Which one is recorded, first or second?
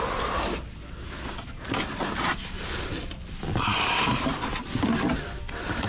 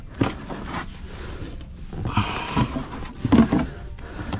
second